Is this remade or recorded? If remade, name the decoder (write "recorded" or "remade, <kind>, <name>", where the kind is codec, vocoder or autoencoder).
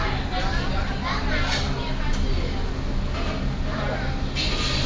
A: recorded